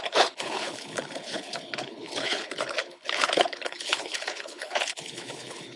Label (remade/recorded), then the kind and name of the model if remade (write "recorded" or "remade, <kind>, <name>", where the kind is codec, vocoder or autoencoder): remade, codec, HILCodec